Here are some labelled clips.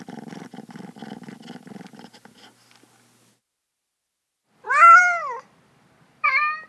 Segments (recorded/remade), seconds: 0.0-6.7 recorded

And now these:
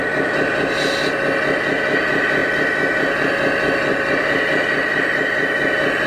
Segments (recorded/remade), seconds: 0.0-3.9 recorded; 3.9-4.5 remade; 4.5-6.1 recorded

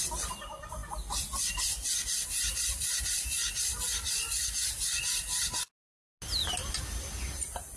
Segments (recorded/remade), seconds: 0.0-0.8 remade; 0.8-1.5 recorded; 1.5-5.7 remade; 5.7-6.7 recorded; 6.7-7.8 remade

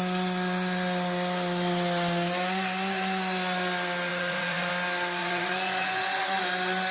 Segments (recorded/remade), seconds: 0.0-4.1 recorded; 4.1-4.7 remade; 4.7-5.2 recorded; 5.2-6.4 remade; 6.4-6.9 recorded

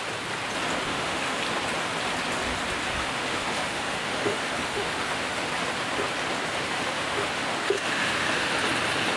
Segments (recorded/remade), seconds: 0.0-0.9 recorded; 0.9-1.4 remade; 1.4-2.9 recorded; 2.9-5.5 remade; 5.5-6.5 recorded; 6.5-8.5 remade; 8.5-9.2 recorded

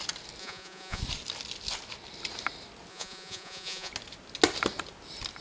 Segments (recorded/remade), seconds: 0.0-0.4 recorded; 0.4-1.0 remade; 1.0-2.9 recorded; 2.9-3.9 remade; 3.9-5.4 recorded

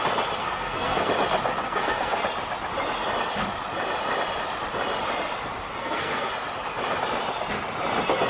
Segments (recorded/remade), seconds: 0.0-0.4 recorded; 0.4-1.1 remade; 1.1-1.6 recorded; 1.6-2.2 remade; 2.2-5.8 recorded; 5.8-6.3 remade; 6.3-8.3 recorded